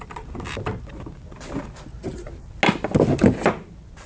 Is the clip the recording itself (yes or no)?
yes